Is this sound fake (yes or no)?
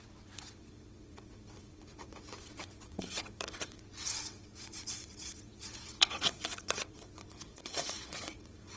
yes